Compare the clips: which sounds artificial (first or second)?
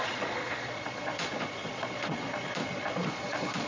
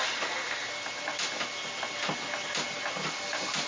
first